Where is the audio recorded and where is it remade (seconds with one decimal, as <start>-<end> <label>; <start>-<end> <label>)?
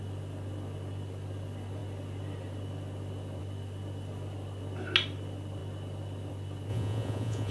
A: 0.0-6.7 recorded; 6.7-7.5 remade